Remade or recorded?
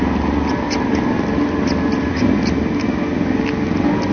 recorded